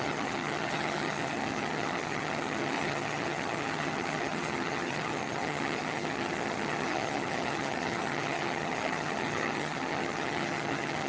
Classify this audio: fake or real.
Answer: fake